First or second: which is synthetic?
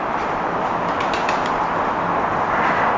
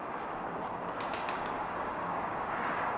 second